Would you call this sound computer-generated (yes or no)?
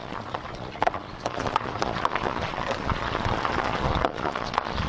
yes